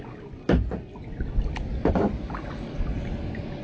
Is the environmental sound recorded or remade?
recorded